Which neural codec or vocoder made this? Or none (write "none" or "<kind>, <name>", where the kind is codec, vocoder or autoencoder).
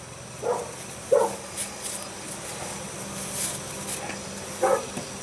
none